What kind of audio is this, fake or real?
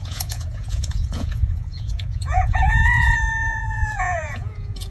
fake